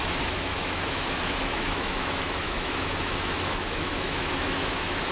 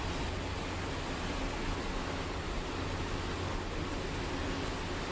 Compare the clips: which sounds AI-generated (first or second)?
first